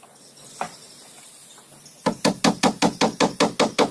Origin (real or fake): real